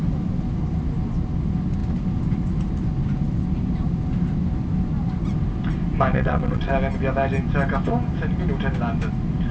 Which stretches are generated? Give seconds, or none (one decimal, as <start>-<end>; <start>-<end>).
6.1-6.7